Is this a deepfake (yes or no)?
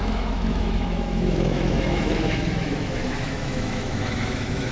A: yes